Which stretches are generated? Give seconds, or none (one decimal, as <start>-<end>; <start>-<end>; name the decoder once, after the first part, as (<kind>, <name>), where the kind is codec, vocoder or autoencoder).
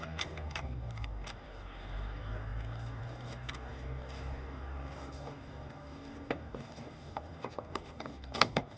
0.0-8.8 (codec, DAC)